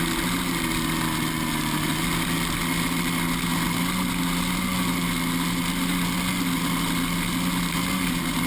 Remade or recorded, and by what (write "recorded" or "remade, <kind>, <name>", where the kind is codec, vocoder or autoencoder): recorded